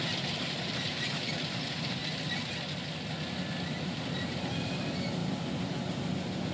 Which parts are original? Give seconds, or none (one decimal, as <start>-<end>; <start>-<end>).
0.0-6.5